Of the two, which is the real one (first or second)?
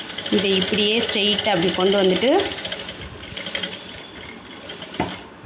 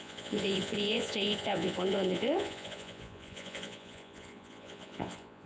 first